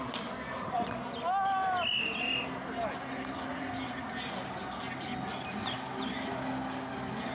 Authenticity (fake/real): real